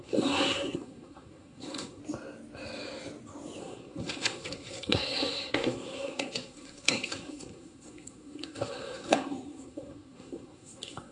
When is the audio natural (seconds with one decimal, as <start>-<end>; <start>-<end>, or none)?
2.0-3.6